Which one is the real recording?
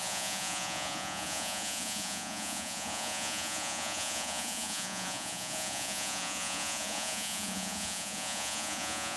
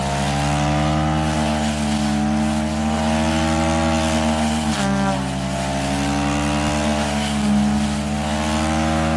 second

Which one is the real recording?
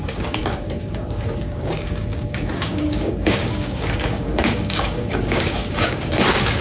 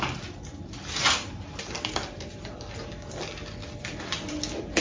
second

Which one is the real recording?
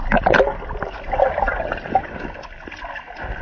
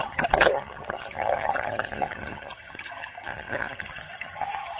first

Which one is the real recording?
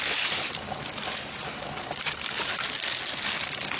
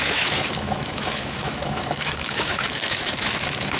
first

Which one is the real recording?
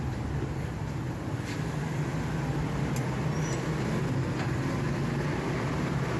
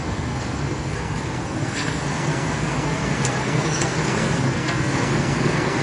first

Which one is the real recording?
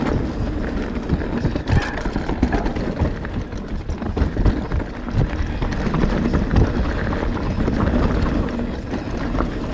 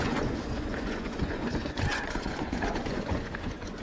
first